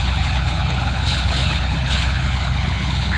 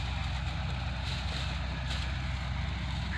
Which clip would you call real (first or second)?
second